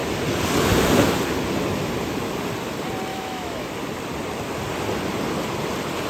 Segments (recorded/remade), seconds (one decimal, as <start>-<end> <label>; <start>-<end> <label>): 0.0-3.1 recorded; 3.1-3.7 remade; 3.7-6.1 recorded